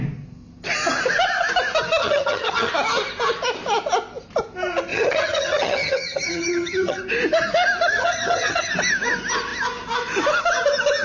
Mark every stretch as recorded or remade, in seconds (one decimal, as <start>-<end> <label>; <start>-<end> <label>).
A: 0.0-2.0 recorded; 2.0-2.7 remade; 2.7-4.9 recorded; 4.9-7.0 remade; 7.0-7.9 recorded; 7.9-8.7 remade; 8.7-11.0 recorded